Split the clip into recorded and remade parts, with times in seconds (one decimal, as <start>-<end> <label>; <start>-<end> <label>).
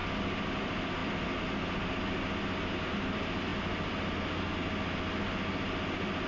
0.0-6.3 recorded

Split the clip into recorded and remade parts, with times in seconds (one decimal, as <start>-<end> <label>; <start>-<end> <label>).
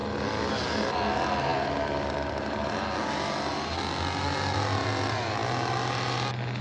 0.0-6.6 recorded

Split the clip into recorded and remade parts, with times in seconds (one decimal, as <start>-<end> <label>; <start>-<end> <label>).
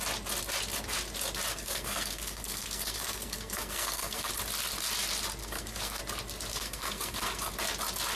0.0-1.5 recorded; 1.5-4.3 remade; 4.3-5.4 recorded; 5.4-6.0 remade; 6.0-6.5 recorded; 6.5-7.5 remade; 7.5-8.2 recorded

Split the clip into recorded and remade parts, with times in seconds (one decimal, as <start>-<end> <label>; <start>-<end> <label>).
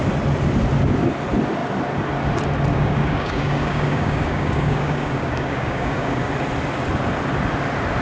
0.0-2.7 recorded; 2.7-6.3 remade; 6.3-8.0 recorded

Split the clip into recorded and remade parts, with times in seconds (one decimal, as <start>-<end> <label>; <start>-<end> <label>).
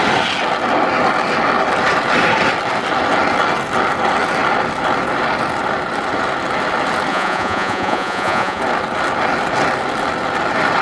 0.0-7.1 recorded; 7.1-8.6 remade; 8.6-10.8 recorded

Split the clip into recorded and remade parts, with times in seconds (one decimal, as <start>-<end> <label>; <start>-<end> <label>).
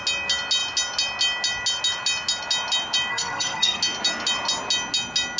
0.0-3.1 recorded; 3.1-3.8 remade; 3.8-5.4 recorded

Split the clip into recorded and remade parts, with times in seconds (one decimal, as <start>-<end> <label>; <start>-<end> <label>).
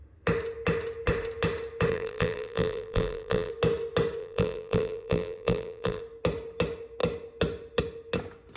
0.0-1.9 recorded; 1.9-3.5 remade; 3.5-4.2 recorded; 4.2-6.0 remade; 6.0-8.6 recorded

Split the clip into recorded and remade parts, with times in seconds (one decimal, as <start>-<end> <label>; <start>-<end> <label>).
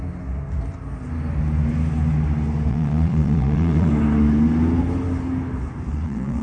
0.0-2.7 recorded; 2.7-3.9 remade; 3.9-5.9 recorded; 5.9-6.4 remade